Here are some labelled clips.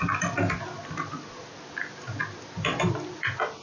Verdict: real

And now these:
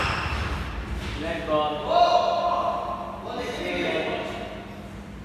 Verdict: real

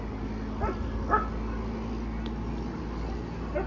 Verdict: real